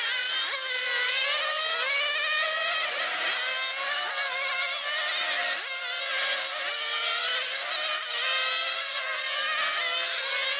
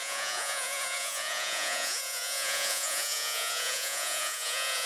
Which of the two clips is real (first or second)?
first